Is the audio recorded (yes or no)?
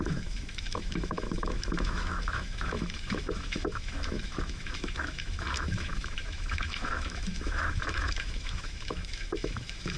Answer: no